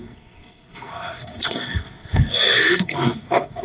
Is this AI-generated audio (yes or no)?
yes